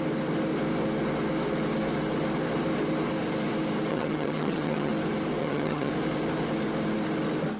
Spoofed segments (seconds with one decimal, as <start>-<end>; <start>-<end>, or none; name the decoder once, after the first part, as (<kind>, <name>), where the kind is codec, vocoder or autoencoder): 3.9-4.9 (vocoder, HiFi-GAN); 5.4-5.9

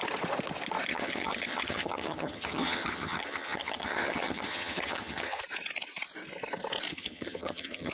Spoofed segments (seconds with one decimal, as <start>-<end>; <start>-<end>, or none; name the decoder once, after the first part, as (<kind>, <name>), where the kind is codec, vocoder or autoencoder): 0.9-5.4 (vocoder, HiFi-GAN); 6.9-7.9

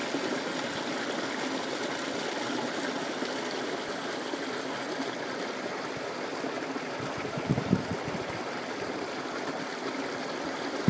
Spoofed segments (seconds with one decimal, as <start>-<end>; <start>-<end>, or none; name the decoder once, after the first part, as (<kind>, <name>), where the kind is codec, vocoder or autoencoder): none

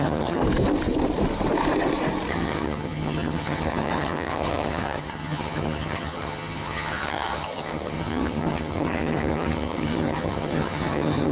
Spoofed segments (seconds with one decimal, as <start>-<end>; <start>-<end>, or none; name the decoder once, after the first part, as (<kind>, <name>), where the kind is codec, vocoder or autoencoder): 0.0-0.4 (vocoder, HiFi-GAN); 2.3-11.3

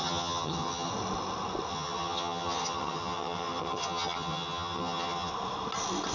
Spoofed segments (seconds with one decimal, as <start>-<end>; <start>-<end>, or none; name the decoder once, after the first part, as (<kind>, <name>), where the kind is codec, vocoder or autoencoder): 0.0-0.9 (vocoder, HiFi-GAN); 1.7-5.3

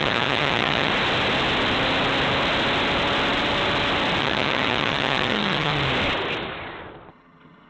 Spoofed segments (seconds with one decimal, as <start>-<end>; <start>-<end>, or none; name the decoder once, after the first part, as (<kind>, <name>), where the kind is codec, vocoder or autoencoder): 0.0-0.9 (vocoder, HiFi-GAN); 4.2-5.7; 7.1-7.7

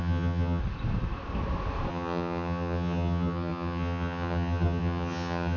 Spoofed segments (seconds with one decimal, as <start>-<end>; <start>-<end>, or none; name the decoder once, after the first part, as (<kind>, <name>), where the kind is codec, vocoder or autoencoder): 0.0-0.6 (vocoder, HiFi-GAN); 1.9-5.6